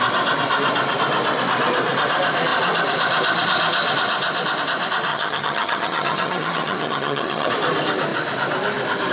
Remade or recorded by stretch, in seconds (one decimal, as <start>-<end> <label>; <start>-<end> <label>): 0.0-5.1 recorded; 5.1-7.5 remade; 7.5-9.1 recorded